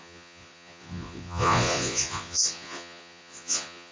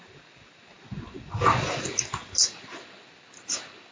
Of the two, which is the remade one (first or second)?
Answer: first